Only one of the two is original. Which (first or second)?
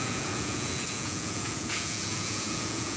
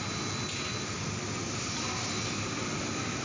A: second